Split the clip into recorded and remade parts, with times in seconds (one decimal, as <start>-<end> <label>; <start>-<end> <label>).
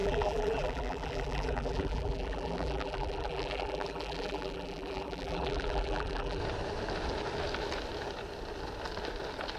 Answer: 0.0-6.4 remade; 6.4-9.6 recorded